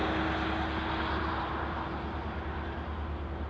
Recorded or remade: recorded